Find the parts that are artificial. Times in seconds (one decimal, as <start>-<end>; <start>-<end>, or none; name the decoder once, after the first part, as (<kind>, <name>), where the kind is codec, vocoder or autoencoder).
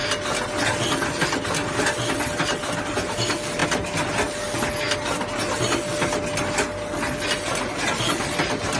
none